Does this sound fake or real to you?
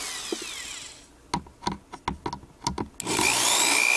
real